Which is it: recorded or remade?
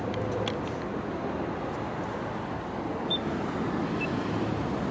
recorded